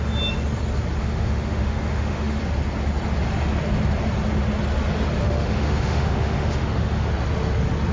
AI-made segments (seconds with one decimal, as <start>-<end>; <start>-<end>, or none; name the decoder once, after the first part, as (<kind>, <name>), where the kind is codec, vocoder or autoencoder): 1.0-2.4 (autoencoder, DAC-VAE); 5.2-7.1